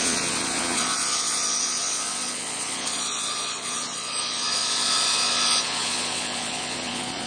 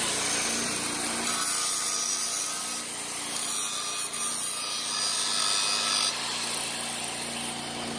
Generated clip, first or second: first